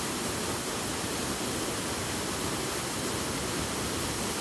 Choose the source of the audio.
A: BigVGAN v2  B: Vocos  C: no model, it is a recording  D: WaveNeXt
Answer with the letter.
C